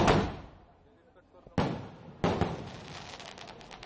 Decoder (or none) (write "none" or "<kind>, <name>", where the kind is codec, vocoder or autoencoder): none